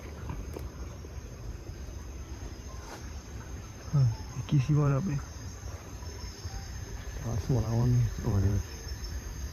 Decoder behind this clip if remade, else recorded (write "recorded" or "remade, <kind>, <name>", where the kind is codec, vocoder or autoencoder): remade, vocoder, BigVGAN v2